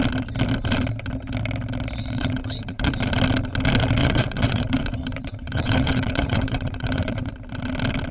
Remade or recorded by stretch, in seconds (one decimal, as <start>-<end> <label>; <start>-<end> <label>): 0.0-2.0 recorded; 2.0-2.9 remade; 2.9-4.0 recorded; 4.0-7.3 remade; 7.3-8.1 recorded